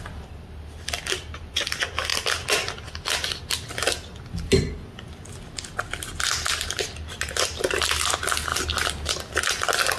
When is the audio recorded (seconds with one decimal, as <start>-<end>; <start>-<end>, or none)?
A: 0.0-10.0